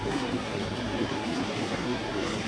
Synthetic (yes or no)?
yes